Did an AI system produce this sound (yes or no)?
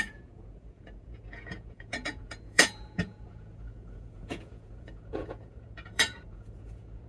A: yes